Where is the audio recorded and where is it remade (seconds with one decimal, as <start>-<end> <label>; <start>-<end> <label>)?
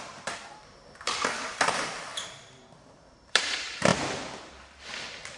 0.0-3.9 remade; 3.9-5.4 recorded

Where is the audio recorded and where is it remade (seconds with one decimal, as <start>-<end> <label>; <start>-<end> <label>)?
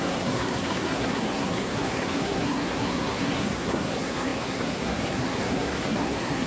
0.0-6.5 remade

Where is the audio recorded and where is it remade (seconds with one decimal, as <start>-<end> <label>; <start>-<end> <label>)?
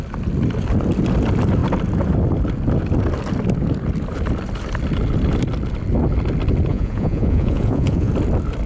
0.0-6.7 recorded; 6.7-8.1 remade; 8.1-8.7 recorded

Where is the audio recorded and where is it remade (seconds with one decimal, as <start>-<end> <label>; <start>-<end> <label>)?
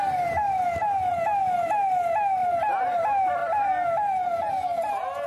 0.0-2.4 recorded; 2.4-3.0 remade; 3.0-3.4 recorded; 3.4-4.5 remade; 4.5-5.3 recorded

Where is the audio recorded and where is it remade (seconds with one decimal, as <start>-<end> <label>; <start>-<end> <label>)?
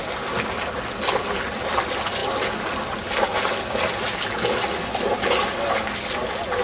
0.0-6.6 recorded